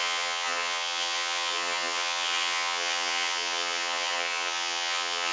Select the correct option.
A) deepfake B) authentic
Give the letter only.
A